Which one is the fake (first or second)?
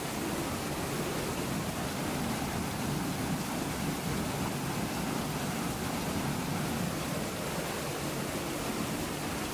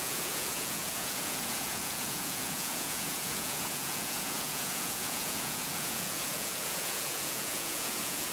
second